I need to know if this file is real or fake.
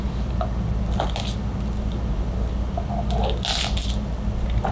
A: real